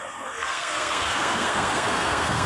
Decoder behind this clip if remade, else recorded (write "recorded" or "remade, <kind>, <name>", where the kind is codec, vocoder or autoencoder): remade, codec, SNAC